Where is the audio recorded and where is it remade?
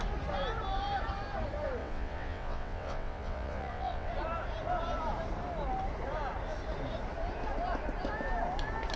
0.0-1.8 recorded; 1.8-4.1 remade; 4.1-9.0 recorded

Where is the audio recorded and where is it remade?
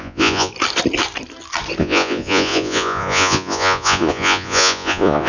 0.0-0.5 remade; 0.5-1.8 recorded; 1.8-5.3 remade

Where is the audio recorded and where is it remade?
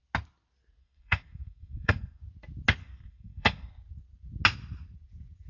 0.0-0.8 recorded; 0.8-2.2 remade; 2.2-2.8 recorded; 2.8-3.7 remade; 3.7-5.5 recorded